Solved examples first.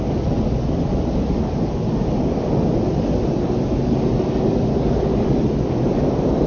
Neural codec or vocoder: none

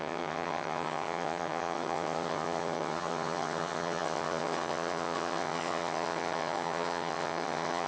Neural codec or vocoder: vocoder, HiFi-GAN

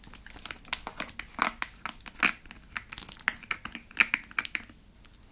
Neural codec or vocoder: none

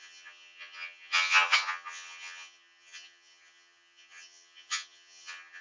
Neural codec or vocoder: vocoder, HiFi-GAN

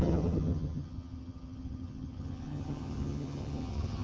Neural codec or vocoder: vocoder, HiFi-GAN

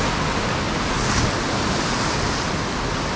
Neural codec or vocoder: none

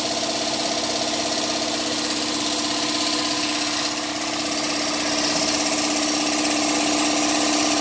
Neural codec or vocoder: none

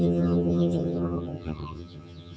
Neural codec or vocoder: vocoder, HiFi-GAN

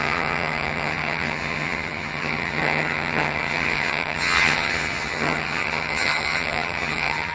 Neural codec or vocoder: vocoder, HiFi-GAN